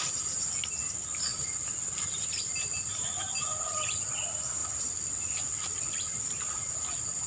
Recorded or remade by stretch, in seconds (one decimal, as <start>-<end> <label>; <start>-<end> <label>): 0.0-4.6 recorded; 4.6-5.1 remade; 5.1-7.3 recorded